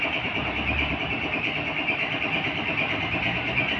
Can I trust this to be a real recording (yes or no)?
no